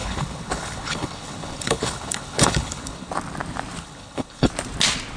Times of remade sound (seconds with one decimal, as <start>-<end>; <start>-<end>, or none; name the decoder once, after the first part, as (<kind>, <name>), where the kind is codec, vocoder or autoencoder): 0.0-3.1 (codec, HILCodec); 3.8-4.5